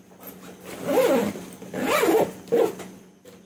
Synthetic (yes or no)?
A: yes